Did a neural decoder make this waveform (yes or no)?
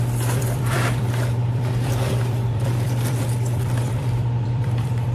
yes